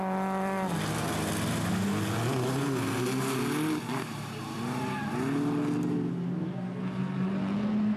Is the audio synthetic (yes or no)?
no